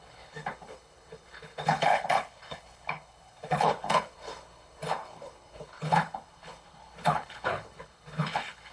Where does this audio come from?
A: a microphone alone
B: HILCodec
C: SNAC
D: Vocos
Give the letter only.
B